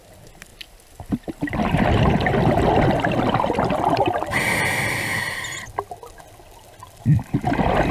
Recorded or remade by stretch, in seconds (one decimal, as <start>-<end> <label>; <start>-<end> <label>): 0.0-7.9 recorded